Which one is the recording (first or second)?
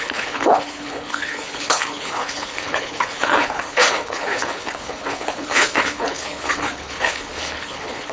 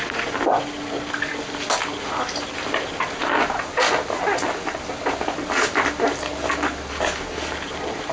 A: second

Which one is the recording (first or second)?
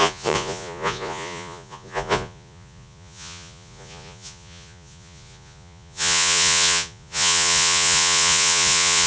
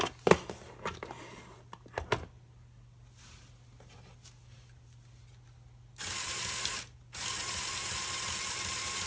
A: second